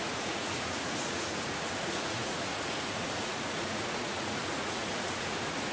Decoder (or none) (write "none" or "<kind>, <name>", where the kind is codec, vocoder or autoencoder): vocoder, Vocos